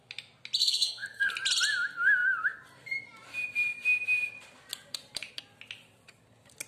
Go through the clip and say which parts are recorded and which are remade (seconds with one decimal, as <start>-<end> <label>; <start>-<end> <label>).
0.0-0.6 recorded; 0.6-1.3 remade; 1.3-6.7 recorded